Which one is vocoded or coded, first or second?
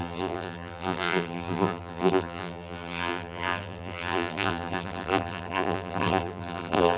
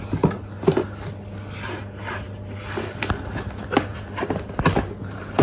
first